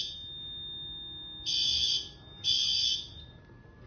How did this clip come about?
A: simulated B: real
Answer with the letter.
B